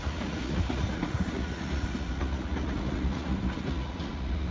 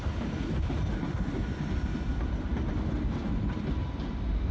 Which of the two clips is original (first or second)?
second